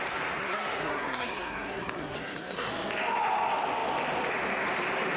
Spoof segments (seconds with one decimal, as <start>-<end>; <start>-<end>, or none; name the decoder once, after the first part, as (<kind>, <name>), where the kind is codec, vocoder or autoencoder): 0.4-2.7 (codec, SNAC)